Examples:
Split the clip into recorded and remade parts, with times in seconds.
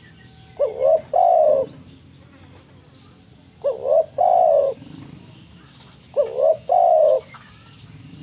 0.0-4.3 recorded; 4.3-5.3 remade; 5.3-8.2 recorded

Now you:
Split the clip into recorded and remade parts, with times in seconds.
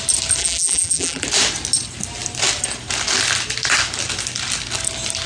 0.0-0.4 recorded; 0.4-1.2 remade; 1.2-5.3 recorded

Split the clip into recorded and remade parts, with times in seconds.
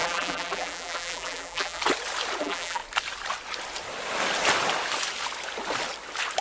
0.0-1.8 remade; 1.8-2.4 recorded; 2.4-2.8 remade; 2.8-6.4 recorded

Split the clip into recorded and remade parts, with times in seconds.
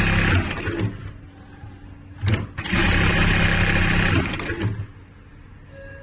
0.0-1.0 recorded; 1.0-4.6 remade; 4.6-6.0 recorded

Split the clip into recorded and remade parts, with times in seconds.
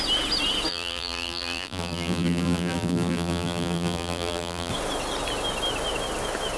0.0-0.7 recorded; 0.7-4.7 remade; 4.7-6.6 recorded